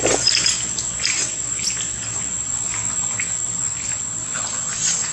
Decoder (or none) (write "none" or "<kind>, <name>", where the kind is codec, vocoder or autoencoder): none